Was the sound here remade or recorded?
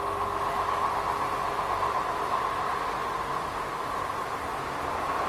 recorded